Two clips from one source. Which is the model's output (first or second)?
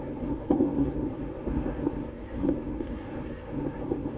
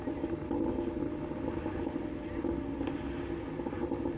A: first